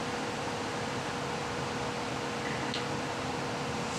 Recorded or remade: recorded